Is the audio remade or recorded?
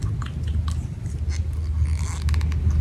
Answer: recorded